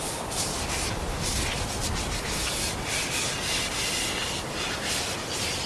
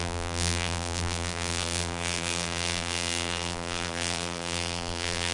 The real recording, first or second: first